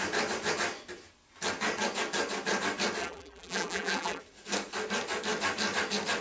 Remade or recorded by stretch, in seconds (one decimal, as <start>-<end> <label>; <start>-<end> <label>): 0.0-3.0 recorded; 3.0-4.2 remade; 4.2-6.2 recorded